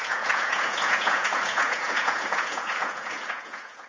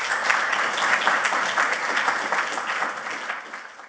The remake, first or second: first